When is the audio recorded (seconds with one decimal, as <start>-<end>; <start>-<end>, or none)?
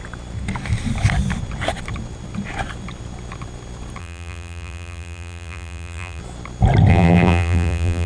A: 0.0-4.0; 6.2-6.9